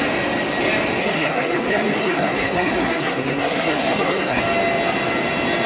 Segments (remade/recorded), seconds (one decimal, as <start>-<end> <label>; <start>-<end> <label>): 0.0-1.0 recorded; 1.0-4.4 remade; 4.4-5.7 recorded